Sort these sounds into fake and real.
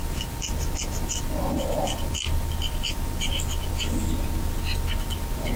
real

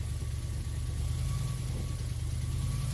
real